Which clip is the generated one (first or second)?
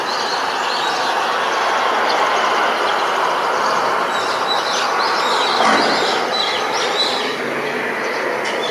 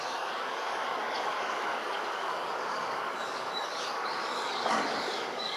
second